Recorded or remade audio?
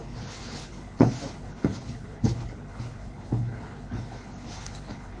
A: remade